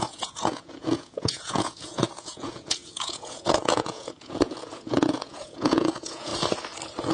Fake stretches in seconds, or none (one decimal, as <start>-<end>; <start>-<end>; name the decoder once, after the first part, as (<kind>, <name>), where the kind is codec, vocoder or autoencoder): 0.0-6.3 (vocoder, Vocos)